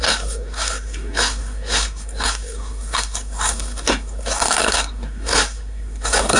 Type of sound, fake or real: fake